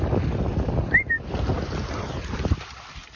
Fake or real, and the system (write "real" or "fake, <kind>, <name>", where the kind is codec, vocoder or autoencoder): real